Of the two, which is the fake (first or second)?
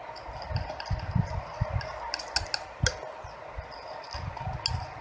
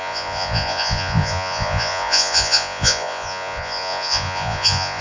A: second